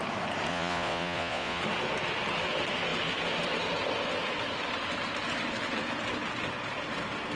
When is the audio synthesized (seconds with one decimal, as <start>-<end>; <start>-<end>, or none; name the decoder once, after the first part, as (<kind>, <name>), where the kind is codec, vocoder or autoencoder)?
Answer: 0.5-1.6 (vocoder, Vocos)